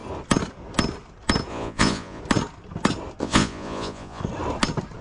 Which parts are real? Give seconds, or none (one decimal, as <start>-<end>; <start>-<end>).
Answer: 0.0-1.5; 2.2-3.2; 4.2-5.0